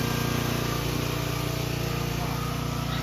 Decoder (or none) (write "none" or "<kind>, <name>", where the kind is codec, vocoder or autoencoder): none